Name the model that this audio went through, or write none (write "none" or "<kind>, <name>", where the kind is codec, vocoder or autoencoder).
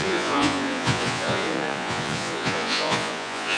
vocoder, Vocos